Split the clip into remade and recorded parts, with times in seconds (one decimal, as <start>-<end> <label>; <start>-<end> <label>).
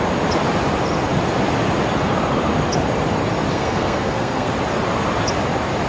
0.0-3.5 recorded; 3.5-4.5 remade; 4.5-5.9 recorded